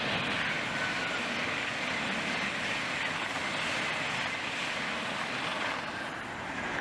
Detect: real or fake real